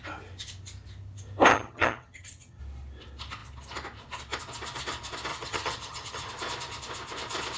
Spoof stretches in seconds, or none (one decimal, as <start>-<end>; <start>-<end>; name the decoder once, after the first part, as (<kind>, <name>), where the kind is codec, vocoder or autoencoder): 1.5-2.6 (vocoder, HiFi-GAN); 5.3-6.3